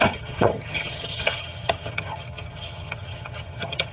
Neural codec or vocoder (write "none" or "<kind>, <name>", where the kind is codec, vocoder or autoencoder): vocoder, HiFi-GAN